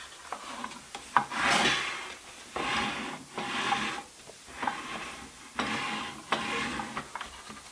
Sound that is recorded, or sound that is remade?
recorded